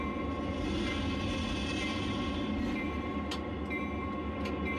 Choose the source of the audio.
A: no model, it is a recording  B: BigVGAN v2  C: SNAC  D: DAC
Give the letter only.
A